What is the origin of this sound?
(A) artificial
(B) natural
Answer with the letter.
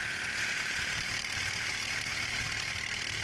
B